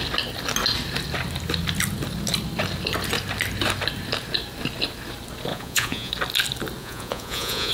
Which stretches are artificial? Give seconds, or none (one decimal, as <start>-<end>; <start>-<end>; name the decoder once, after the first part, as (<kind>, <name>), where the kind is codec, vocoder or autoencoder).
5.5-6.1 (vocoder, Vocos); 6.8-7.7